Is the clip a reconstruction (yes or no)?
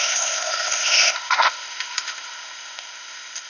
yes